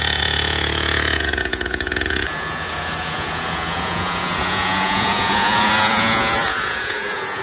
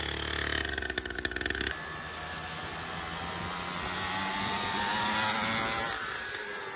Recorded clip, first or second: second